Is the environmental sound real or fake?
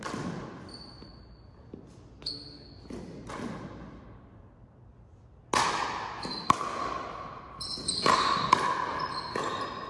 real